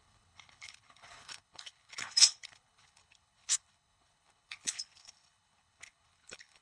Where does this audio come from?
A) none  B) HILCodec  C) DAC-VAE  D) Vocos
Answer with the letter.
B